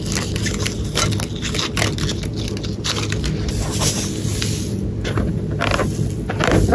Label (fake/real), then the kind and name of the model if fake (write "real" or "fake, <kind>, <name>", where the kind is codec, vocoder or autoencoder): real